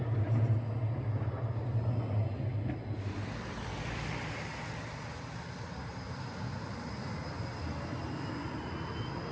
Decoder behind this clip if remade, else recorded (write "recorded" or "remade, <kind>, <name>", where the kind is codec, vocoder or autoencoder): recorded